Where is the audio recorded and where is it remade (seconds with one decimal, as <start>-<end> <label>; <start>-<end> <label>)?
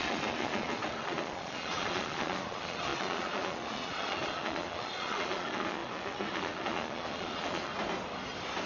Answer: 0.0-7.7 remade; 7.7-8.7 recorded